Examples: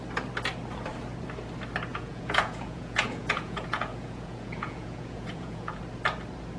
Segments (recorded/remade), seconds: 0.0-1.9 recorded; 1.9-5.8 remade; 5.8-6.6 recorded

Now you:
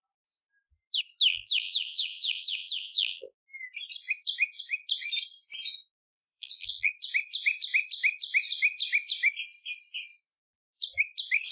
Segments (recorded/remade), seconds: 0.0-1.3 recorded; 1.3-3.3 remade; 3.3-6.0 recorded; 6.0-6.9 remade; 6.9-11.5 recorded

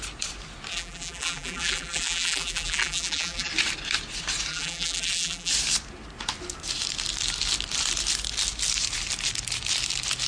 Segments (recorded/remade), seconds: 0.0-0.7 recorded; 0.7-3.5 remade; 3.5-4.5 recorded; 4.5-5.5 remade; 5.5-10.3 recorded

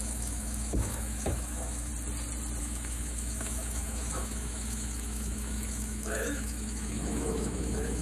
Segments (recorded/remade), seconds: 0.0-1.9 remade; 1.9-2.6 recorded; 2.6-8.0 remade

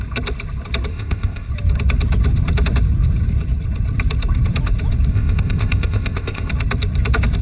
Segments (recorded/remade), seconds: 0.0-0.9 recorded; 0.9-1.5 remade; 1.5-5.1 recorded; 5.1-6.5 remade; 6.5-7.4 recorded

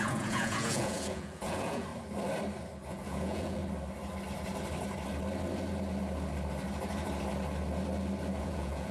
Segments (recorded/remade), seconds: 0.0-1.9 remade; 1.9-2.9 recorded; 2.9-3.6 remade; 3.6-8.4 recorded; 8.4-8.9 remade

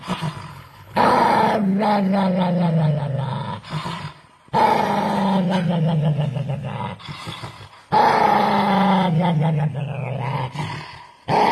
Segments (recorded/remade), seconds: 0.0-0.5 recorded; 0.5-1.1 remade; 1.1-11.5 recorded

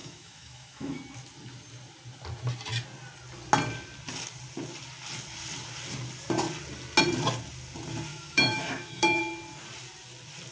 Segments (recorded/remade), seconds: 0.0-1.0 remade; 1.0-8.1 recorded; 8.1-9.2 remade; 9.2-10.5 recorded